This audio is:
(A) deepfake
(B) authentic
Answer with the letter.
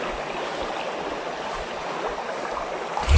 B